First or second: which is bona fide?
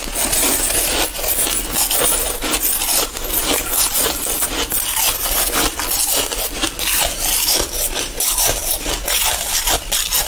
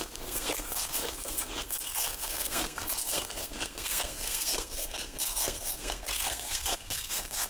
first